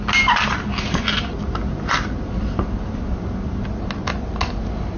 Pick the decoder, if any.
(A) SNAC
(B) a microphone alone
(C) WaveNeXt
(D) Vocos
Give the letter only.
B